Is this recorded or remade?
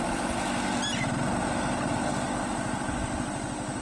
recorded